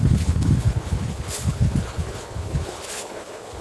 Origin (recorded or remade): remade